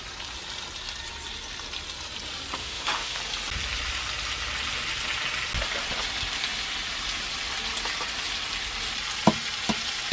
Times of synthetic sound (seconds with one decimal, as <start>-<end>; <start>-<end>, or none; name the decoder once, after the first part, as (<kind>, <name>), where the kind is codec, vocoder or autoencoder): 2.6-3.2 (autoencoder, DAC-VAE)